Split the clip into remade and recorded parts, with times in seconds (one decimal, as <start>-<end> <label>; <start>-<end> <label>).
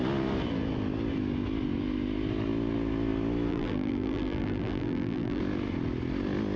0.0-3.5 recorded; 3.5-5.4 remade; 5.4-6.6 recorded